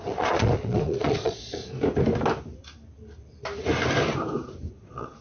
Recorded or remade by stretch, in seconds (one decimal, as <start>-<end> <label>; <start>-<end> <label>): 0.0-1.6 remade; 1.6-4.7 recorded; 4.7-5.2 remade